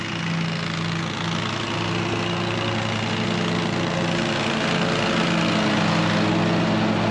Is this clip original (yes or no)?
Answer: yes